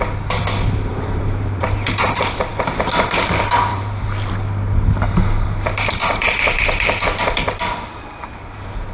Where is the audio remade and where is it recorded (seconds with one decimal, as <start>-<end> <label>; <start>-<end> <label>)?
0.0-0.9 recorded; 0.9-1.6 remade; 1.6-3.7 recorded; 3.7-4.3 remade; 4.3-6.0 recorded; 6.0-6.6 remade; 6.6-8.9 recorded